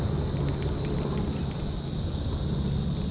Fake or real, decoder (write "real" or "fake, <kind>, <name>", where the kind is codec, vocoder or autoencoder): real